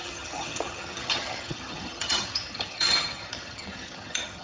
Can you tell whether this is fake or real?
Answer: fake